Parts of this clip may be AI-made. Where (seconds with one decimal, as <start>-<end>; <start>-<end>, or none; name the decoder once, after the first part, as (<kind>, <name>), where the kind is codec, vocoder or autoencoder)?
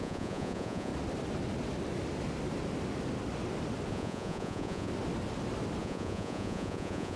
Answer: 0.0-0.9 (vocoder, Vocos); 3.9-4.9; 5.8-7.2